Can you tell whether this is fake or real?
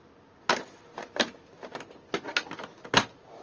real